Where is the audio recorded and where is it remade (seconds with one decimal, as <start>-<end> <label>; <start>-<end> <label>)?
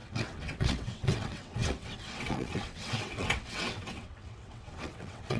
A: 0.0-5.4 remade